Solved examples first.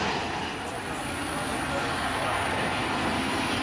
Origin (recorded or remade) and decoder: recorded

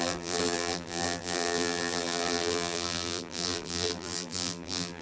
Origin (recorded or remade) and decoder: remade, vocoder, BigVGAN v2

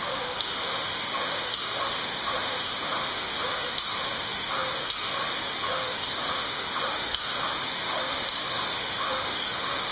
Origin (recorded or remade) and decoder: remade, autoencoder, DAC-VAE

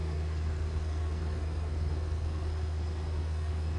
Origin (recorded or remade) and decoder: remade, codec, SNAC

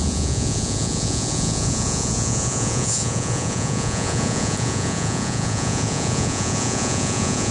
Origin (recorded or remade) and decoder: remade, vocoder, Vocos